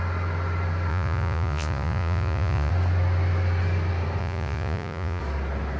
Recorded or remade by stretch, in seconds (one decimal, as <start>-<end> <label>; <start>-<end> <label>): 0.0-0.9 recorded; 0.9-2.7 remade; 2.7-4.2 recorded; 4.2-5.2 remade; 5.2-5.8 recorded